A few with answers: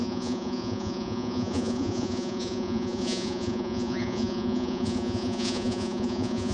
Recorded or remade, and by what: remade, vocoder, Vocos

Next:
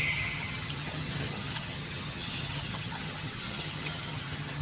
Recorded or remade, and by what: remade, vocoder, HiFi-GAN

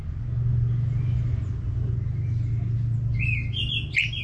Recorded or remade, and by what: recorded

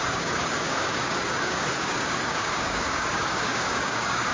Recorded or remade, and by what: remade, codec, DAC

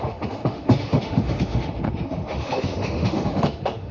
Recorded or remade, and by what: remade, autoencoder, DAC-VAE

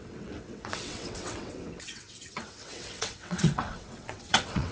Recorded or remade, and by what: remade, vocoder, WaveNeXt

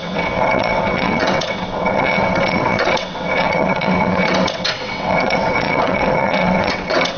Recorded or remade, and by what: remade, vocoder, WaveNeXt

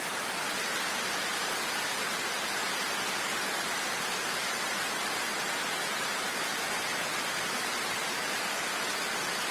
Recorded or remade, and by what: recorded